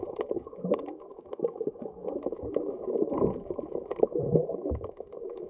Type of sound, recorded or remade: remade